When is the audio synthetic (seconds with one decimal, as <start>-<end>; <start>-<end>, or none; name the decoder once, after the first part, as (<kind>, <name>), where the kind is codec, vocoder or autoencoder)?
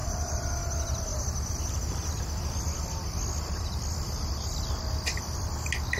0.0-0.5 (vocoder, BigVGAN v2); 1.1-2.2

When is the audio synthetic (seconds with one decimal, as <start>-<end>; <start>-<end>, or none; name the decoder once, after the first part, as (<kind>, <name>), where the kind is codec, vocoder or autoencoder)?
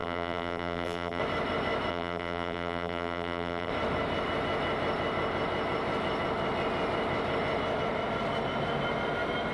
0.0-1.2 (vocoder, BigVGAN v2); 1.9-3.7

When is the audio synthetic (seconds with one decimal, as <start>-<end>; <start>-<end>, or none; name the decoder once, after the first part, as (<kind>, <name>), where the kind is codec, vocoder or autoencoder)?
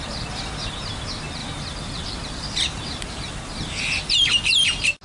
1.4-4.4 (vocoder, BigVGAN v2)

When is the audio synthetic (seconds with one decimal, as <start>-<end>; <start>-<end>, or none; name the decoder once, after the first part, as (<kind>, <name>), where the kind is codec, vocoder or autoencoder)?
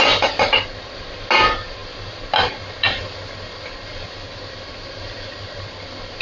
none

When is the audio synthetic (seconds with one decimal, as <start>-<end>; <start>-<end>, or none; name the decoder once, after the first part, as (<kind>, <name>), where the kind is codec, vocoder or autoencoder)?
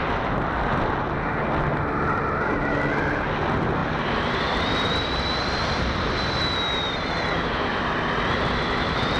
none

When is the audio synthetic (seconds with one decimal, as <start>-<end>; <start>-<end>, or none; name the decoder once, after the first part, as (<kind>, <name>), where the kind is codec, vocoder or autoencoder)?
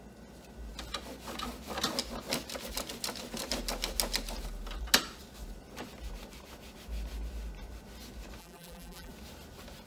8.4-9.1 (vocoder, BigVGAN v2)